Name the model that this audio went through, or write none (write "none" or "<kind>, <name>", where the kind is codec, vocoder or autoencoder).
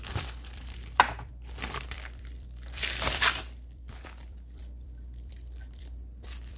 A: vocoder, BigVGAN v2